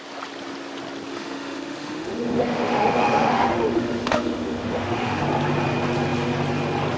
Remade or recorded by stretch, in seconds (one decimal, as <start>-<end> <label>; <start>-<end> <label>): 0.0-1.1 recorded; 1.1-5.2 remade; 5.2-7.0 recorded